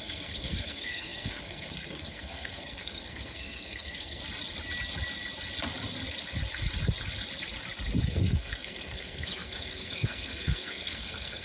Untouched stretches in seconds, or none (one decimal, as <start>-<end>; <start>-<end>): 4.2-8.0